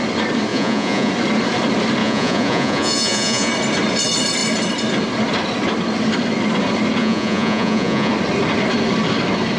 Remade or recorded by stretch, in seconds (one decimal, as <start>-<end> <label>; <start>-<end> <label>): 0.0-0.5 recorded; 0.5-1.1 remade; 1.1-2.0 recorded; 2.0-3.5 remade; 3.5-7.0 recorded; 7.0-8.1 remade; 8.1-9.6 recorded

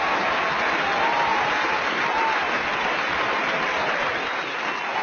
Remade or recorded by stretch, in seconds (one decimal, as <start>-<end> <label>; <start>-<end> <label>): 0.0-5.0 recorded

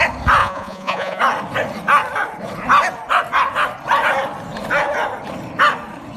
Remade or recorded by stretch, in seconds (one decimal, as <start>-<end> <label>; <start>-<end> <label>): 0.0-0.4 recorded; 0.4-1.2 remade; 1.2-6.2 recorded

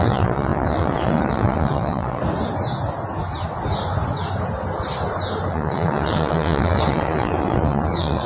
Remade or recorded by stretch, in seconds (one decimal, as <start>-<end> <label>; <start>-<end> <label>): 0.0-2.2 remade; 2.2-5.5 recorded; 5.5-8.3 remade